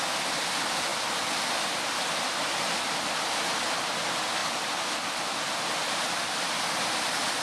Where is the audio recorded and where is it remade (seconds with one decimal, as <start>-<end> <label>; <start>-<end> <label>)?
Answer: 0.0-7.4 recorded